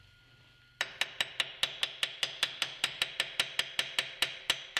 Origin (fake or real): real